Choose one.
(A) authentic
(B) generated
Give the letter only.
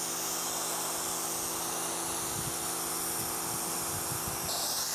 A